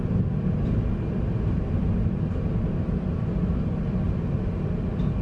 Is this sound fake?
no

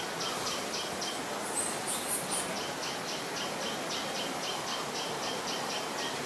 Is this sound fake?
no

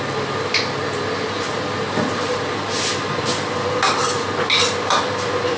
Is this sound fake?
no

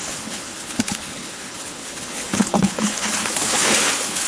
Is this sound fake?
yes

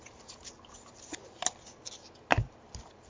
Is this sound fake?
no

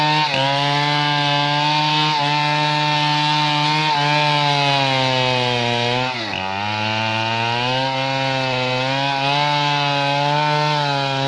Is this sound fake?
no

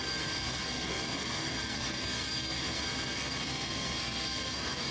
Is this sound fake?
yes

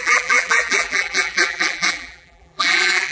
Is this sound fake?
yes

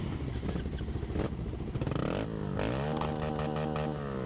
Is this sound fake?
no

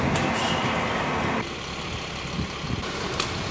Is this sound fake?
no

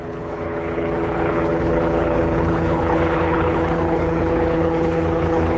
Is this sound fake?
yes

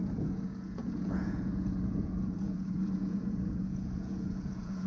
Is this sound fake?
yes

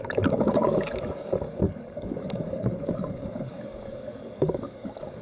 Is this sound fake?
yes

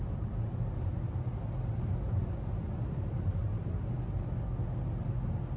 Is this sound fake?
no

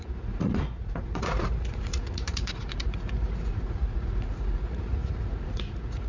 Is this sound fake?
yes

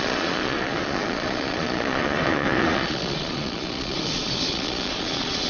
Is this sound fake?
yes